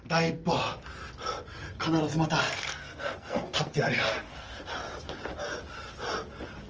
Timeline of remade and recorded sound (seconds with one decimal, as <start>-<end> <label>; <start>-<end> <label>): 0.0-0.4 remade; 0.4-2.4 recorded; 2.4-4.5 remade; 4.5-6.7 recorded